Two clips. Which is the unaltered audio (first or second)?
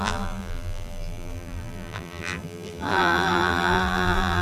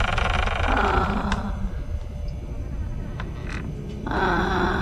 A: second